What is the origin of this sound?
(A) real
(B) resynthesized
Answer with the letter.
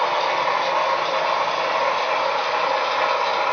A